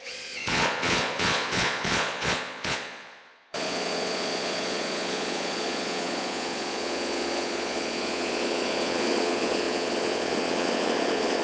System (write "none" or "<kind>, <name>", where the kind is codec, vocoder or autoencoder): vocoder, Vocos